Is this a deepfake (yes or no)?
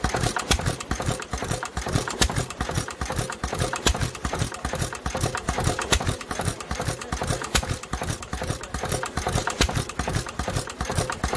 yes